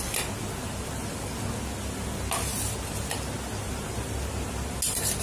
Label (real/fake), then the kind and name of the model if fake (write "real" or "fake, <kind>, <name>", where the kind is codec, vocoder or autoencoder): real